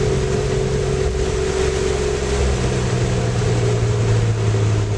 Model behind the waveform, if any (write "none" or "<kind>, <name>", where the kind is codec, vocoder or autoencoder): none